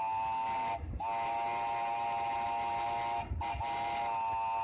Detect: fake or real real